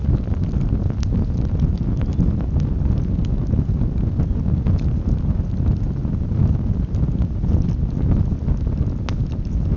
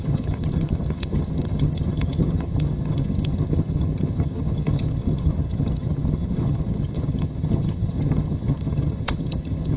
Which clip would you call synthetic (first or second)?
second